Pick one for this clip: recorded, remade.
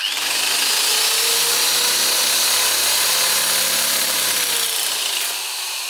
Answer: recorded